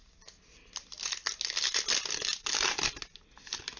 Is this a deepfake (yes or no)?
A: no